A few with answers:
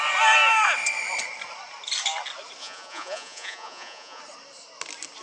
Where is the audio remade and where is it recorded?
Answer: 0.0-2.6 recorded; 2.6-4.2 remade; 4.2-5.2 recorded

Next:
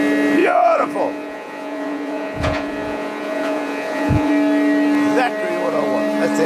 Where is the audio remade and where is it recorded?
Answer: 0.0-0.4 recorded; 0.4-4.3 remade; 4.3-6.5 recorded

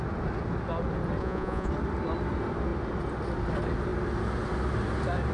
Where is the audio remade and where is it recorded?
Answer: 0.0-1.2 recorded; 1.2-1.7 remade; 1.7-5.3 recorded

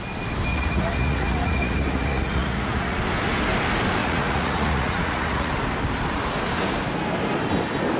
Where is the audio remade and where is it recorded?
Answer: 0.0-0.5 recorded; 0.5-3.0 remade; 3.0-4.0 recorded; 4.0-5.5 remade; 5.5-8.0 recorded